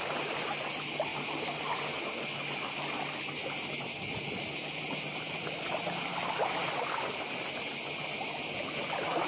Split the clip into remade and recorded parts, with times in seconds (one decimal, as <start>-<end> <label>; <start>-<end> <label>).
0.0-9.3 recorded